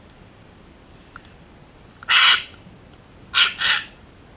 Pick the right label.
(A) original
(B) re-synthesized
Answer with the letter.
B